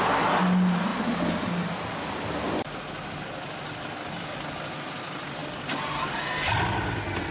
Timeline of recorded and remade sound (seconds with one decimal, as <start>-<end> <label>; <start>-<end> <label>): 0.0-7.3 recorded